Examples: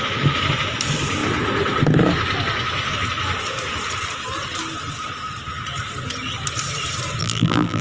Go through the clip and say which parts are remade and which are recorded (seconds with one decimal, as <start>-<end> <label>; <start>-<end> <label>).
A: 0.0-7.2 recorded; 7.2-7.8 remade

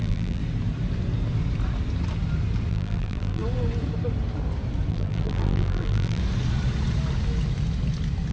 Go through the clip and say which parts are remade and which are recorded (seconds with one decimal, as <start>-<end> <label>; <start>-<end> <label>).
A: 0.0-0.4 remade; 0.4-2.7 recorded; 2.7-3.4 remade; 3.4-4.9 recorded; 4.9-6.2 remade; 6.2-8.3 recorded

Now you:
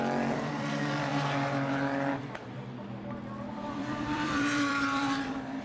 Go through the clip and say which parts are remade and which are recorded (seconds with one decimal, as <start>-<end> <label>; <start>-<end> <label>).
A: 0.0-1.1 remade; 1.1-3.5 recorded; 3.5-5.6 remade